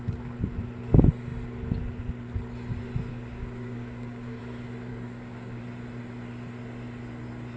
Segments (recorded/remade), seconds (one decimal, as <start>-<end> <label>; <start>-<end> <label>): 0.0-3.1 recorded; 3.1-4.4 remade; 4.4-4.9 recorded; 4.9-5.6 remade; 5.6-7.6 recorded

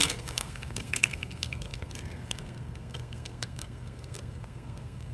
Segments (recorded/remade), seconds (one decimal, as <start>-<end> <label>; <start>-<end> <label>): 0.0-5.1 remade

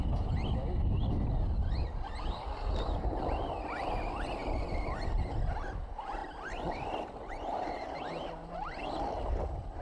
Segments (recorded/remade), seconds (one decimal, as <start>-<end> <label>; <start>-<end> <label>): 0.0-9.8 recorded